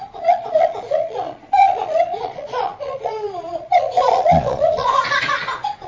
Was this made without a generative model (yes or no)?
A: no